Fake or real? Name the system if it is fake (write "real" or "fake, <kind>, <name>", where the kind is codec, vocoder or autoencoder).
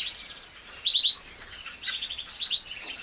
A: real